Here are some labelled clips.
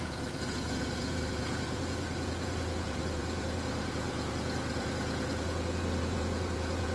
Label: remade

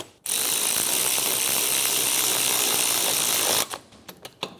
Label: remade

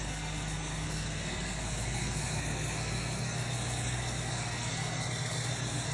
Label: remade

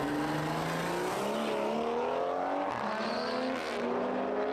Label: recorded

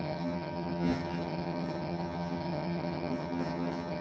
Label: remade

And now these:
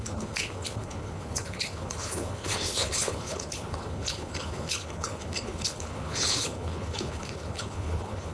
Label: remade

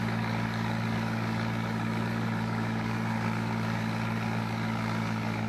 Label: remade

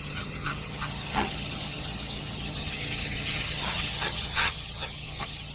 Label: remade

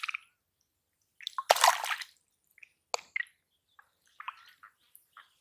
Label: recorded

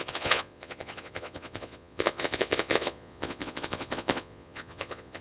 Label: remade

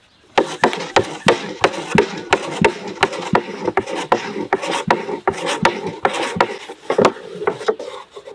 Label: recorded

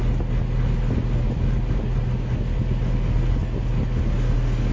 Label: recorded